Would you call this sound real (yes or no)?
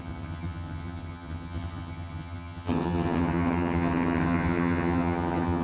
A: no